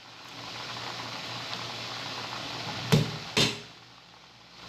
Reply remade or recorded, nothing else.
recorded